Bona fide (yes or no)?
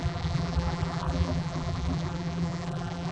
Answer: no